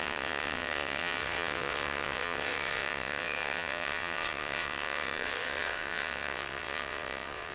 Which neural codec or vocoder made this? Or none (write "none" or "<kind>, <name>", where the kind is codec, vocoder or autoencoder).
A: vocoder, WaveNeXt